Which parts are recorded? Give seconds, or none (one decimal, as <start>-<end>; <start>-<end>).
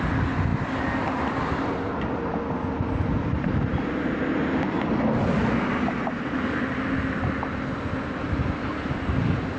0.0-0.5; 2.4-5.4; 8.7-9.6